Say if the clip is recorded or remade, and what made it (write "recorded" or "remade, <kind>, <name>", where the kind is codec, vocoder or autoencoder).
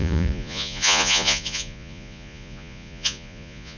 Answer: remade, vocoder, Vocos